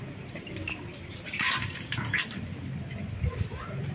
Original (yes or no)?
no